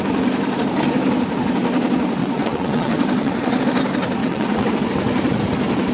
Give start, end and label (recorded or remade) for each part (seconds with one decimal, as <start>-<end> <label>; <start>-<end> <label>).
0.0-2.2 recorded; 2.2-3.6 remade; 3.6-4.2 recorded; 4.2-4.7 remade; 4.7-5.9 recorded